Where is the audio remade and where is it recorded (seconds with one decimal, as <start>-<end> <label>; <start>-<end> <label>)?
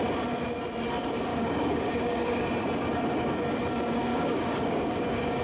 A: 0.0-1.3 recorded; 1.3-2.4 remade; 2.4-4.1 recorded; 4.1-5.4 remade